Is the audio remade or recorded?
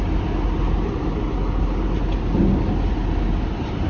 recorded